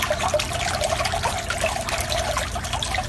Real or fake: real